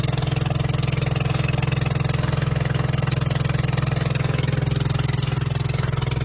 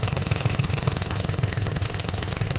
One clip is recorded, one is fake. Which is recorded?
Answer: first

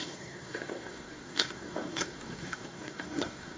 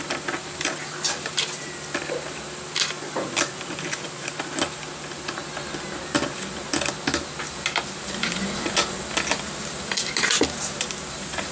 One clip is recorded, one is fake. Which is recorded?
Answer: second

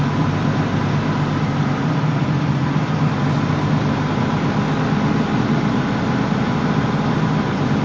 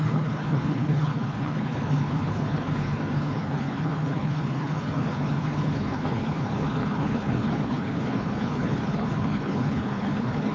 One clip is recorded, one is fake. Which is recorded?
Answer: first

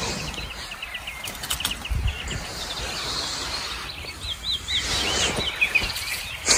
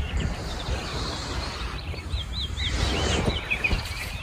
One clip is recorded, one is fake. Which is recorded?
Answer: first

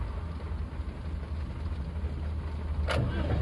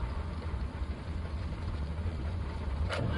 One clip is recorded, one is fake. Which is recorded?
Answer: first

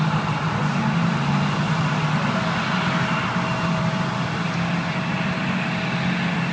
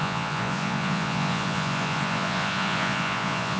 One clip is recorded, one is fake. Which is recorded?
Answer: first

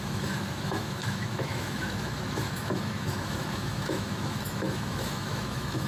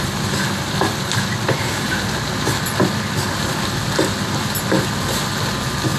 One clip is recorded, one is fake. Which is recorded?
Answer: second